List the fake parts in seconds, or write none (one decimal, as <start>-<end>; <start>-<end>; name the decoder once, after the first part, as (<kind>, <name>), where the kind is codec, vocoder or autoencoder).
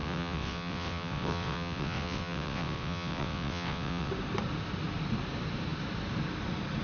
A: 0.0-4.1 (vocoder, WaveNeXt)